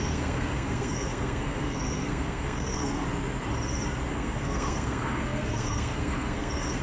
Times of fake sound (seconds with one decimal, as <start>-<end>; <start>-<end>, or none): 0.0-3.0; 4.1-6.8